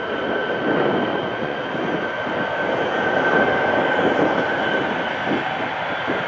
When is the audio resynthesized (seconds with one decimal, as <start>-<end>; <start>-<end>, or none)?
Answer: 1.1-1.6